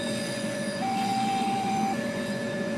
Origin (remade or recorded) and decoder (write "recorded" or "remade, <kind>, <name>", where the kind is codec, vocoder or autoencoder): remade, vocoder, Vocos